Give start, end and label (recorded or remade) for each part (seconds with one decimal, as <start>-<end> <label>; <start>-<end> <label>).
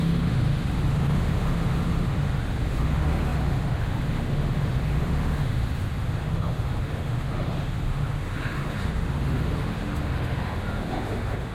0.0-11.5 remade